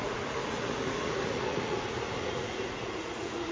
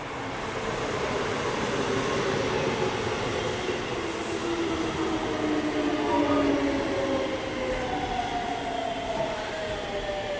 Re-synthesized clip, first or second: first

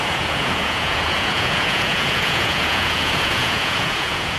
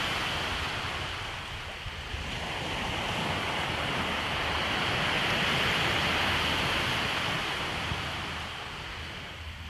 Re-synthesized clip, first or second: first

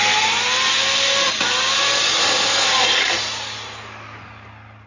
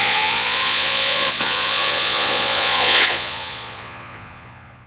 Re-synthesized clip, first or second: second